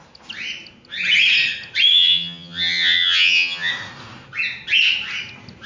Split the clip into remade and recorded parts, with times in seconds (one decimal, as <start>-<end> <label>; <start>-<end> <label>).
0.0-1.9 recorded; 1.9-3.7 remade; 3.7-5.7 recorded